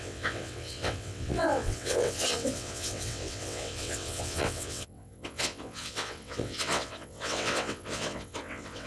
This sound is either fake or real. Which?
fake